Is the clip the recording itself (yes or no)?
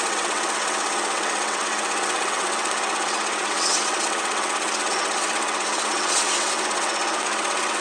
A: no